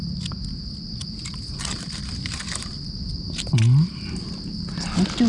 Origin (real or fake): real